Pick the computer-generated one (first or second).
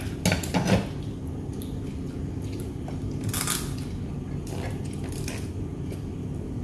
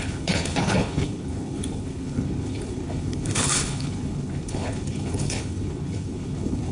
second